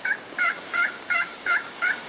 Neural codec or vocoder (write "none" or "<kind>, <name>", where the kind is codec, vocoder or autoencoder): codec, DAC